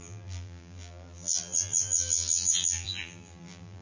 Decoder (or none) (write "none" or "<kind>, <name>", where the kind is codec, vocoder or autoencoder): vocoder, BigVGAN v2